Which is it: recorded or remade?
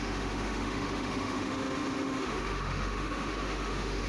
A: remade